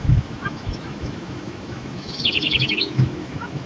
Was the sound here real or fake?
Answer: fake